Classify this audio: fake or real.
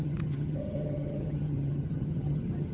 fake